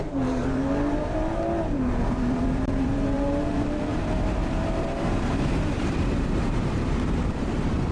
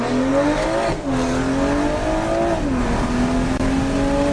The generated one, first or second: first